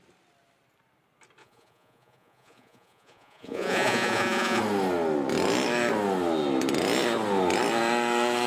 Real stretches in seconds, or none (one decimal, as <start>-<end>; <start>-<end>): 0.0-1.4; 4.6-8.5